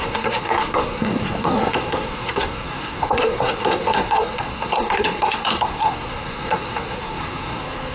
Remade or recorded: remade